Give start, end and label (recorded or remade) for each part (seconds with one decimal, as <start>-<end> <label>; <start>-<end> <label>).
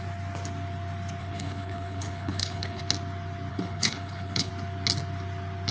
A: 0.0-1.2 recorded; 1.2-2.8 remade; 2.8-3.5 recorded; 3.5-4.5 remade; 4.5-5.7 recorded